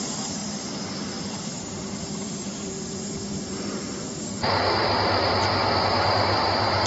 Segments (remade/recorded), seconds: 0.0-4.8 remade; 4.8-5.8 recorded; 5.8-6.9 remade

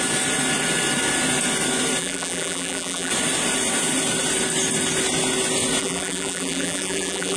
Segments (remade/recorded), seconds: 0.0-2.0 recorded; 2.0-3.1 remade; 3.1-5.8 recorded; 5.8-7.4 remade